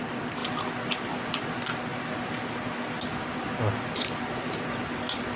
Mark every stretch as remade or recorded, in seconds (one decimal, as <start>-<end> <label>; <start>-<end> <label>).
0.0-5.4 recorded

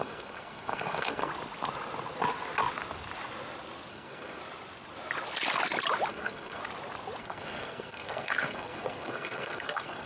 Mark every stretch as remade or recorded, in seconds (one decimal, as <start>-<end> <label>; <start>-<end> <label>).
0.0-1.3 remade; 1.3-3.9 recorded; 3.9-4.4 remade; 4.4-6.1 recorded; 6.1-6.6 remade; 6.6-7.2 recorded; 7.2-10.1 remade

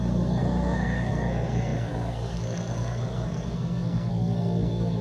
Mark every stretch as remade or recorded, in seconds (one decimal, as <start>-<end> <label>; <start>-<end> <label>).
0.0-5.0 remade

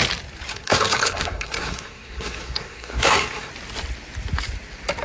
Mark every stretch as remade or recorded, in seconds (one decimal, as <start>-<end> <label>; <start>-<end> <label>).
0.0-0.5 recorded; 0.5-3.5 remade; 3.5-5.0 recorded

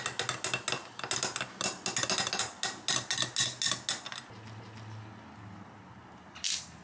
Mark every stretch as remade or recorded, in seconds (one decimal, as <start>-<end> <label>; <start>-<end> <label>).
0.0-6.8 recorded

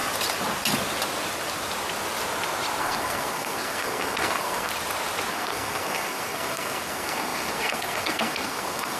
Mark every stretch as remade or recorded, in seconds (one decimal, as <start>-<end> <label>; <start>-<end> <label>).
0.0-2.8 recorded; 2.8-4.7 remade; 4.7-5.3 recorded; 5.3-9.0 remade